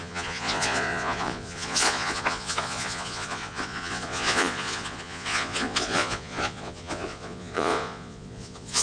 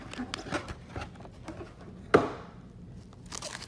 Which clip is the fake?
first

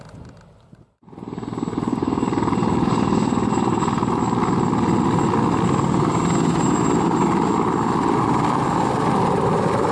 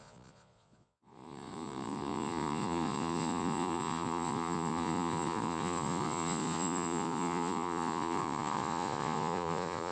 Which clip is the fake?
second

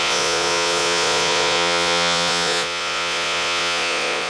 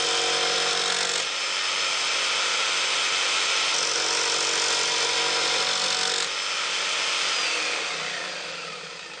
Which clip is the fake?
first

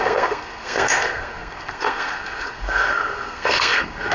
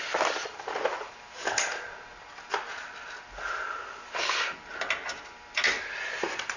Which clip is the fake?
first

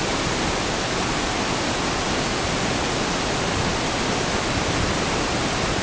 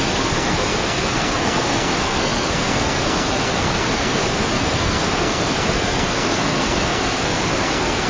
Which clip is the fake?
second